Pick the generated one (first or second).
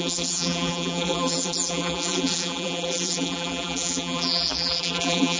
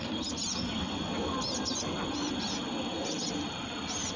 first